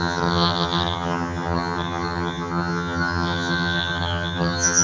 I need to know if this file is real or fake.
fake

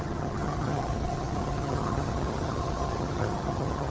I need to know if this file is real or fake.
fake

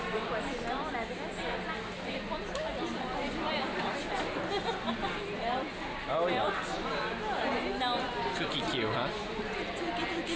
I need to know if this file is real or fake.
real